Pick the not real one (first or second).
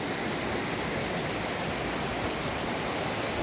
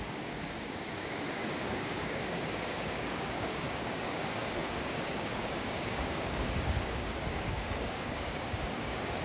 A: second